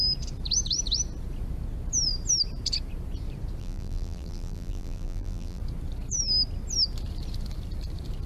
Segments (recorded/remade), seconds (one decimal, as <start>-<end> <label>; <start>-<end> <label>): 0.0-3.6 recorded; 3.6-5.6 remade; 5.6-8.3 recorded